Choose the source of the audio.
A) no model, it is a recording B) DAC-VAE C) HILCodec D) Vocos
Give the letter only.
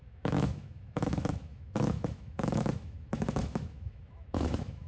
B